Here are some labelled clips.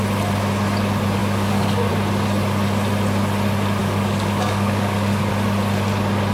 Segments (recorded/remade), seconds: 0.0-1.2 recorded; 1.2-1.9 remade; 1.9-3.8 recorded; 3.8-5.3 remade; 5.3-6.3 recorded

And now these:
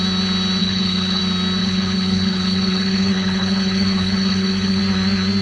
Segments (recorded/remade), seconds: 0.0-0.6 recorded; 0.6-1.2 remade; 1.2-1.6 recorded; 1.6-4.8 remade; 4.8-5.4 recorded

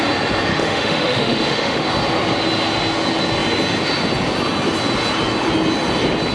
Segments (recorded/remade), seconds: 0.0-0.5 recorded; 0.5-1.9 remade; 1.9-6.3 recorded

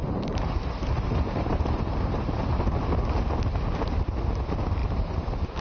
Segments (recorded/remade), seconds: 0.0-2.7 remade; 2.7-4.8 recorded; 4.8-5.6 remade

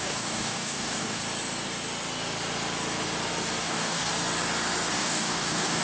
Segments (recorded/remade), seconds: 0.0-1.2 remade; 1.2-3.6 recorded; 3.6-4.1 remade; 4.1-4.9 recorded; 4.9-5.8 remade

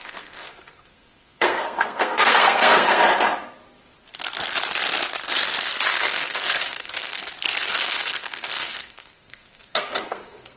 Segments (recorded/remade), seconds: 0.0-3.0 remade; 3.0-5.9 recorded; 5.9-7.2 remade; 7.2-7.7 recorded; 7.7-10.6 remade

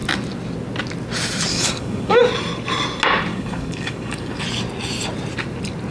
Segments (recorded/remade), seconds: 0.0-1.5 recorded; 1.5-2.2 remade; 2.2-3.3 recorded; 3.3-4.4 remade; 4.4-5.9 recorded

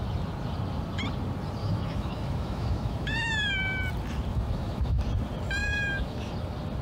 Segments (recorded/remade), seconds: 0.0-1.6 recorded; 1.6-3.3 remade; 3.3-4.3 recorded; 4.3-5.0 remade; 5.0-5.6 recorded; 5.6-6.3 remade; 6.3-6.8 recorded